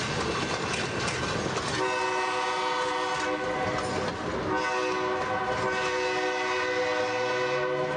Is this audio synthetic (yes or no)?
no